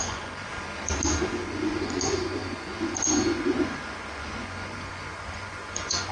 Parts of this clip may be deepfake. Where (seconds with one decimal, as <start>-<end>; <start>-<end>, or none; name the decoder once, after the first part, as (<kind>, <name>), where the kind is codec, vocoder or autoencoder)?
0.0-0.5 (vocoder, Vocos); 1.3-6.1